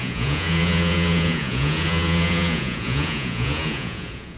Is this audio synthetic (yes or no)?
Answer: yes